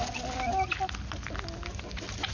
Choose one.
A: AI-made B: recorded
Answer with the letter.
B